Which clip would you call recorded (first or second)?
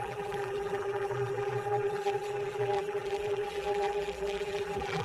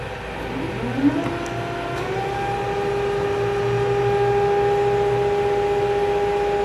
second